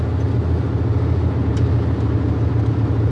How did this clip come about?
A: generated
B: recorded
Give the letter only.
B